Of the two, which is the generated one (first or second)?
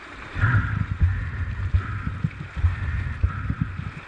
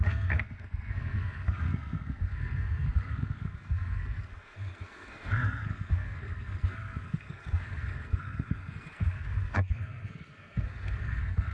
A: second